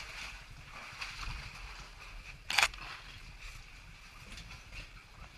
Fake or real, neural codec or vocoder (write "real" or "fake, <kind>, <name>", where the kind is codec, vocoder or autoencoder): real